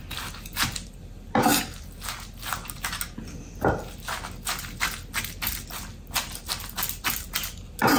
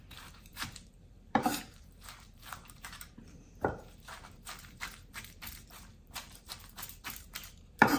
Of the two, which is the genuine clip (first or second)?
first